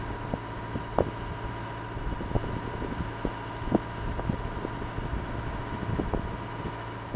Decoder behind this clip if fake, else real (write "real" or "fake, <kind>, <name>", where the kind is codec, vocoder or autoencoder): real